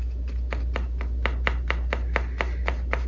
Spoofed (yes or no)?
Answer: no